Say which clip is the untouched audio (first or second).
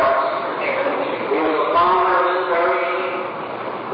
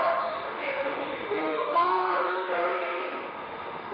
first